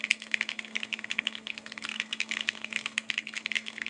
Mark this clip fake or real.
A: fake